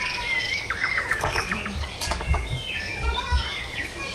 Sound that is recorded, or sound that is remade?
remade